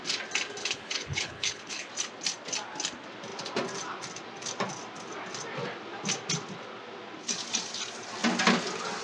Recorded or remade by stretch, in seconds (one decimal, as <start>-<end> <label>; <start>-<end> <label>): 0.0-0.6 recorded; 0.6-1.9 remade; 1.9-9.0 recorded